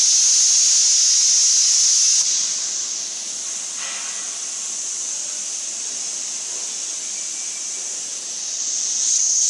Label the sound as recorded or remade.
recorded